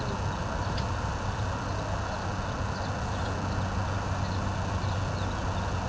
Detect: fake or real real